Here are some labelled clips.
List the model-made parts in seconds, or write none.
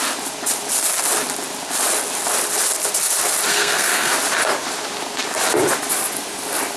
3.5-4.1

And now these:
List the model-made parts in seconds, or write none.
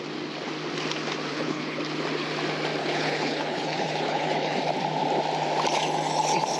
1.3-1.8; 2.8-4.6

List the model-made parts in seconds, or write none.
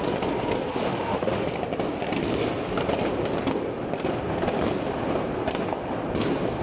0.7-1.4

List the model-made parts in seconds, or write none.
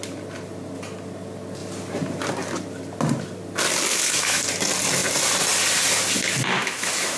3.9-4.4; 6.6-7.2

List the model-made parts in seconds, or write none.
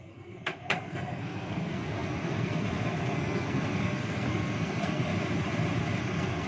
0.0-5.1; 6.0-6.5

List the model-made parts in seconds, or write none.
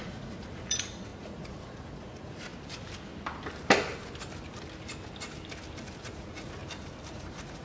0.0-2.5; 6.0-6.6; 7.1-7.6